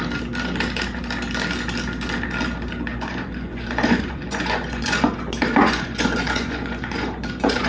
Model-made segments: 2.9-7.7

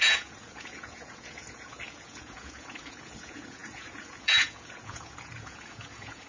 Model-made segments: 0.0-6.3

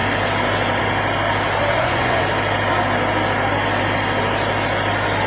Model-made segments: 1.7-2.2

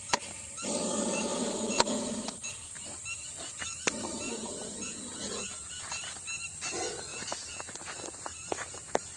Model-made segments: 1.3-2.1; 4.3-5.8; 7.1-7.8